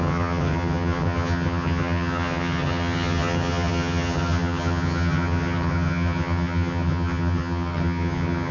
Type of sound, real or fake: fake